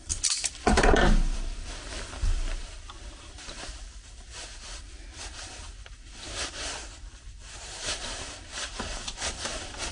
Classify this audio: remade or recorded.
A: remade